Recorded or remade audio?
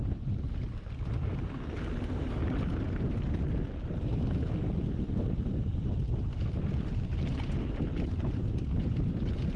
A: recorded